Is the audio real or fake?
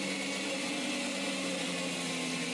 real